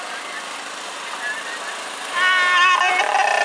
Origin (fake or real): real